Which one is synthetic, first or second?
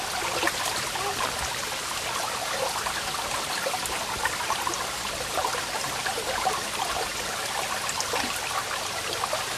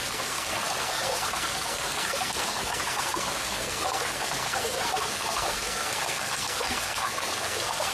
second